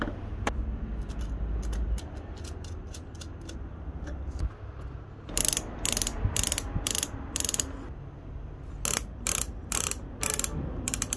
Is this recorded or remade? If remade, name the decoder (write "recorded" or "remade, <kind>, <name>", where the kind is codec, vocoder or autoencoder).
recorded